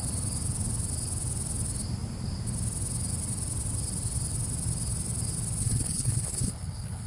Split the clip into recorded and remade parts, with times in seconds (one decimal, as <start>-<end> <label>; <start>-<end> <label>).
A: 0.0-5.6 recorded; 5.6-7.1 remade